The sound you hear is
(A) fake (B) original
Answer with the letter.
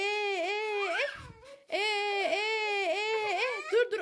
B